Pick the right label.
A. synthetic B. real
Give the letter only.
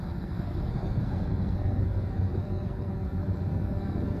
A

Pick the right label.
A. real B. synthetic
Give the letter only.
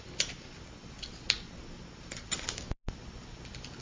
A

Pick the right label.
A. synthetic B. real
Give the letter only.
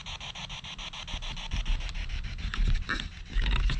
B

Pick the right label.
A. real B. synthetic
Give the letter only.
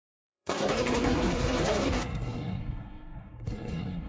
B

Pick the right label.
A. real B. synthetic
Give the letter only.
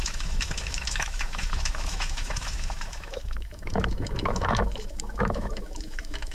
B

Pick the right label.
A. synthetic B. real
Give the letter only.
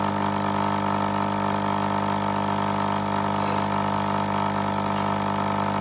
B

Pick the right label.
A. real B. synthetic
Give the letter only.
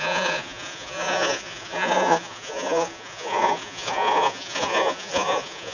B